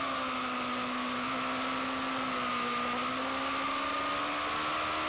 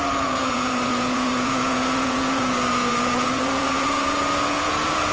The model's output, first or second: second